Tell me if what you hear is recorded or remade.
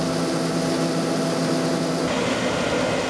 recorded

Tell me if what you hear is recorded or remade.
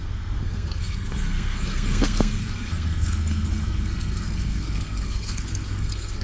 remade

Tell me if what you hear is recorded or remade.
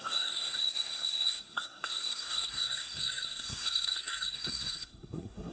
remade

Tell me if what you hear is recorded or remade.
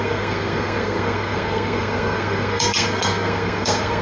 remade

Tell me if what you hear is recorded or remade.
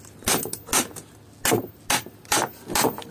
recorded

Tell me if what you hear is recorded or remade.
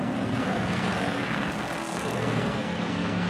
remade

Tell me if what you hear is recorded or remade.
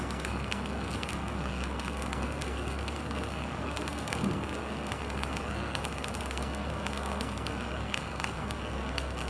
remade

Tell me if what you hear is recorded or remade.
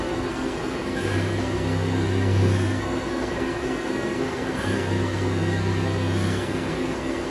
remade